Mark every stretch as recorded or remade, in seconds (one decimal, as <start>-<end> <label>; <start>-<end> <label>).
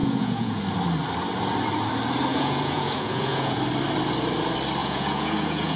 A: 0.0-0.6 remade; 0.6-2.3 recorded; 2.3-3.6 remade; 3.6-4.8 recorded; 4.8-5.8 remade